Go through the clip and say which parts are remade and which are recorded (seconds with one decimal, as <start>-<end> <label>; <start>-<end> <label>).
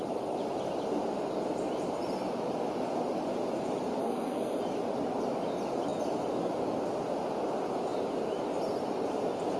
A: 0.0-4.0 recorded; 4.0-4.6 remade; 4.6-9.6 recorded